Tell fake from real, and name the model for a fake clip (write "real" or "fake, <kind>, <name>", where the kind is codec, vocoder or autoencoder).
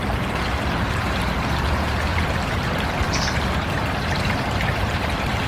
fake, vocoder, BigVGAN v2